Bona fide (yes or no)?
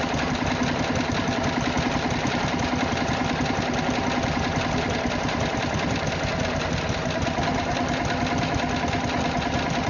yes